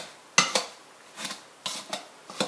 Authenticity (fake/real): real